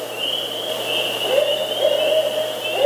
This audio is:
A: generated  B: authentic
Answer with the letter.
B